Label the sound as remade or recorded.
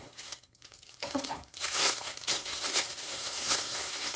remade